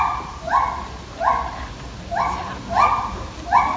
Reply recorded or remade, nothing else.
recorded